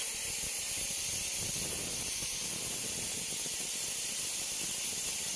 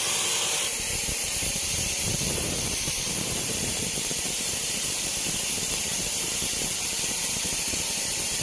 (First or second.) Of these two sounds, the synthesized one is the second